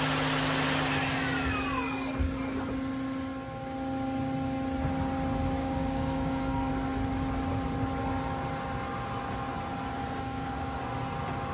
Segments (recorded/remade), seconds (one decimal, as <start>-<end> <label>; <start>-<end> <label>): 0.0-5.6 recorded; 5.6-6.7 remade; 6.7-10.0 recorded; 10.0-10.8 remade; 10.8-11.5 recorded